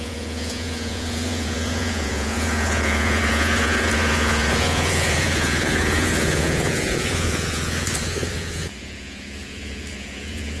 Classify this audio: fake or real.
fake